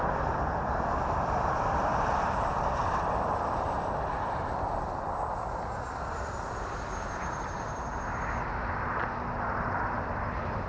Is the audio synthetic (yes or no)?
no